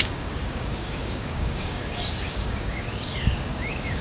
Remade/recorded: remade